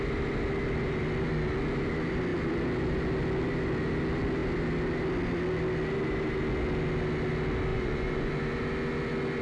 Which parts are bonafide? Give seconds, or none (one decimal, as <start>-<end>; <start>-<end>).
0.0-7.7; 8.3-9.4